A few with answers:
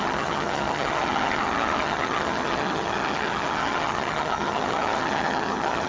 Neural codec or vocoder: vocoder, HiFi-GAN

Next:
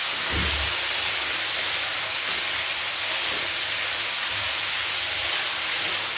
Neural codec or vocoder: none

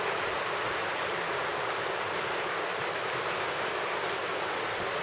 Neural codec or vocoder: none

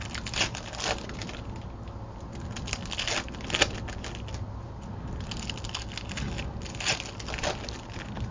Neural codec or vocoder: none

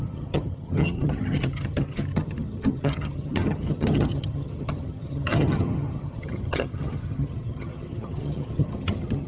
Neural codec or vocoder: vocoder, HiFi-GAN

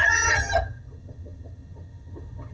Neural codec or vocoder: vocoder, HiFi-GAN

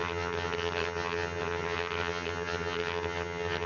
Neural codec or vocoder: vocoder, HiFi-GAN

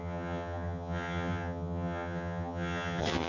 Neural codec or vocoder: vocoder, HiFi-GAN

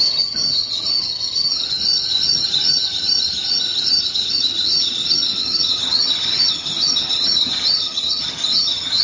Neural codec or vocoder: vocoder, HiFi-GAN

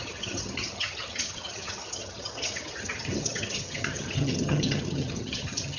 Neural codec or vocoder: vocoder, HiFi-GAN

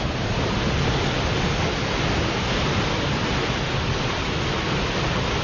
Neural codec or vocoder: none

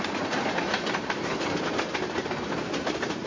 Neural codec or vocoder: none